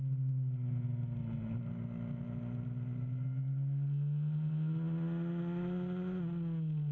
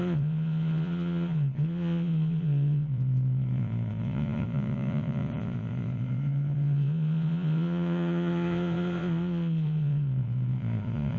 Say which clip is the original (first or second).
first